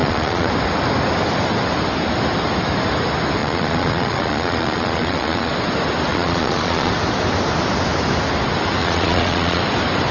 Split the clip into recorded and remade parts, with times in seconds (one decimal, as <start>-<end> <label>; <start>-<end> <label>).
0.0-0.5 remade; 0.5-3.4 recorded; 3.4-5.5 remade; 5.5-6.1 recorded; 6.1-6.9 remade; 6.9-8.8 recorded; 8.8-9.6 remade; 9.6-10.1 recorded

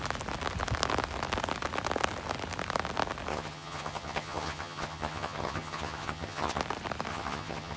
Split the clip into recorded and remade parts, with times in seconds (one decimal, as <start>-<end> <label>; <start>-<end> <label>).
0.0-3.3 recorded; 3.3-6.6 remade; 6.6-7.1 recorded; 7.1-7.8 remade

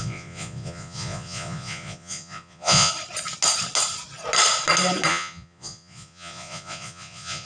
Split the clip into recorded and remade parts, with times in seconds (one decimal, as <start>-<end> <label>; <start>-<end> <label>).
0.0-2.9 remade; 2.9-5.1 recorded; 5.1-7.5 remade

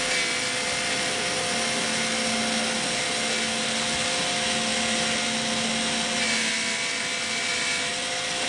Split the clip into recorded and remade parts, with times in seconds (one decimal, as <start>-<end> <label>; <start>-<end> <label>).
0.0-8.5 recorded